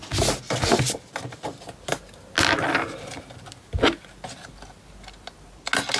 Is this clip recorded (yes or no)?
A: yes